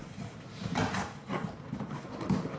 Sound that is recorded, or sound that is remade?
remade